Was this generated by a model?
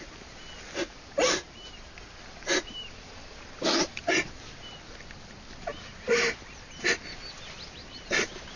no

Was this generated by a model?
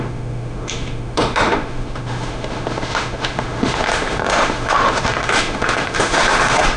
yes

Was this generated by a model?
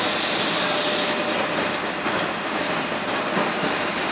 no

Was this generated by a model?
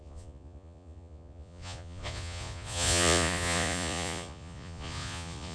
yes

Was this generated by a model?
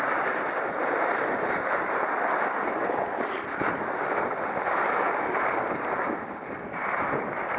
no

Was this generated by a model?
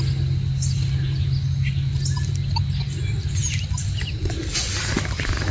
no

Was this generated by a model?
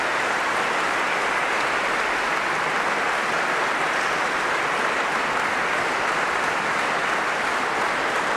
no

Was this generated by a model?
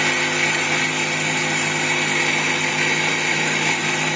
no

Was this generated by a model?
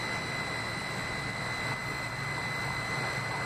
no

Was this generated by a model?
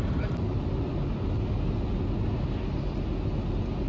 no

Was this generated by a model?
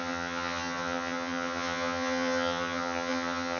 yes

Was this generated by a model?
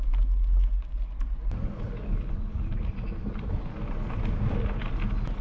no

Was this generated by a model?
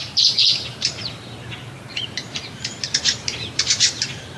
yes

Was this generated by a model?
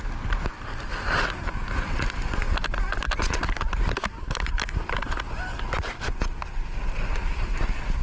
no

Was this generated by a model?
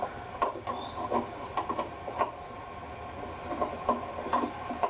no